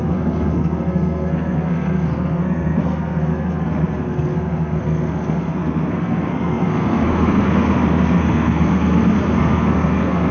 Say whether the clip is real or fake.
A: fake